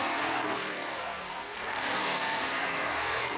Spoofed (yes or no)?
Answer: yes